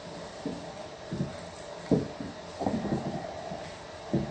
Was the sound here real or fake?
real